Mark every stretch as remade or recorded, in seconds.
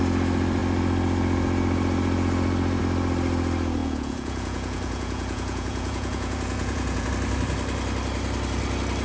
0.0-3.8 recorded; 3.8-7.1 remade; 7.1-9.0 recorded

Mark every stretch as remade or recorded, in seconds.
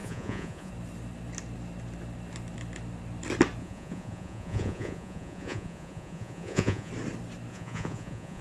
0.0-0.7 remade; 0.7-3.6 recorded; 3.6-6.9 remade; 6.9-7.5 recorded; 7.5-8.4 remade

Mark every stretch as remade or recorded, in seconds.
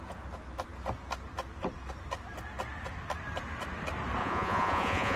0.0-4.2 recorded; 4.2-5.2 remade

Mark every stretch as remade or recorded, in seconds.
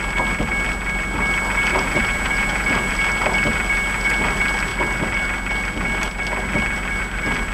0.0-1.7 recorded; 1.7-2.9 remade; 2.9-7.5 recorded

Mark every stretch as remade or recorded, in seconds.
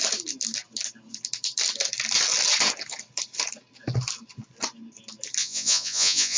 0.0-5.4 recorded; 5.4-6.4 remade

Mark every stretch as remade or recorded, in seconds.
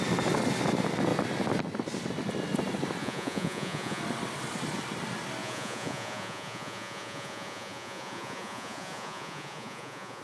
0.0-3.0 recorded; 3.0-4.0 remade; 4.0-5.4 recorded; 5.4-10.2 remade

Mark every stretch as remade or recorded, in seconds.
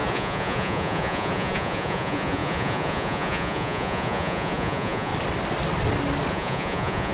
0.0-5.1 remade; 5.1-6.3 recorded; 6.3-7.1 remade